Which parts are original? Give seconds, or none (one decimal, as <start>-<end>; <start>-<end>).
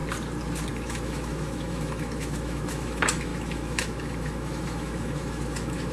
0.0-0.7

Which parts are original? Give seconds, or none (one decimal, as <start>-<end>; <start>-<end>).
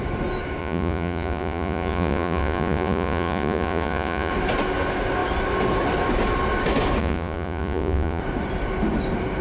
0.0-0.6; 4.3-7.0; 8.2-9.4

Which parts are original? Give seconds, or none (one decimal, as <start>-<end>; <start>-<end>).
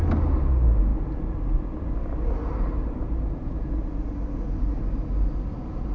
0.0-5.9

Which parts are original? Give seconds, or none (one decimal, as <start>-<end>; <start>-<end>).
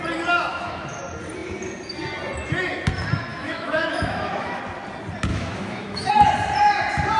0.0-0.5; 1.0-3.3; 4.6-5.3; 6.1-7.2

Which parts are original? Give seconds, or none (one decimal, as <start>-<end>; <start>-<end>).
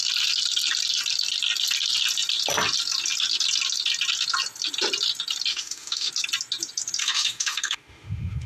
0.0-5.5; 6.1-7.0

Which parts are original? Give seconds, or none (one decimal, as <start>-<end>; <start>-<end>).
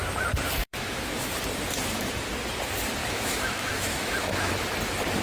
0.0-0.6; 1.3-3.0; 4.5-5.2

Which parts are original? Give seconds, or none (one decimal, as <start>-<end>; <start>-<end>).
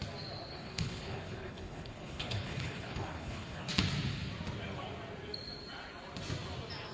0.0-0.5; 3.7-6.9